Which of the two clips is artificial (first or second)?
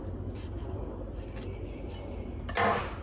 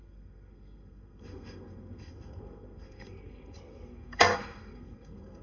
second